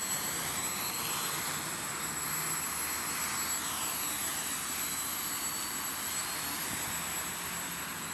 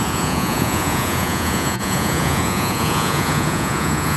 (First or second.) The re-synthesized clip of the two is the second